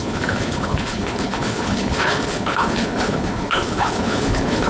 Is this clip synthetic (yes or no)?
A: yes